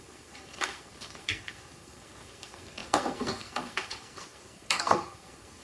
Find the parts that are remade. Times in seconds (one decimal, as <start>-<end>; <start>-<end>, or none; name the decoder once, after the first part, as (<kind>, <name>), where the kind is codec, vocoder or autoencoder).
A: 0.0-5.6 (codec, SNAC)